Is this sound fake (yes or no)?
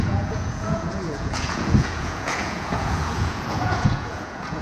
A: yes